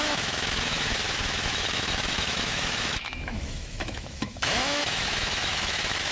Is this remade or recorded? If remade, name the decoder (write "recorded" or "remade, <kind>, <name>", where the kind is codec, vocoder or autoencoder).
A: remade, autoencoder, DAC-VAE